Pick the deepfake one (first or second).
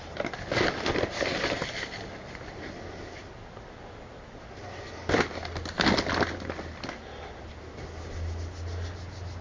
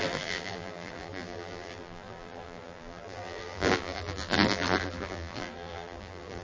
second